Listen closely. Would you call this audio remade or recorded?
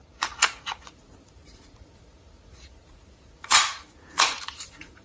remade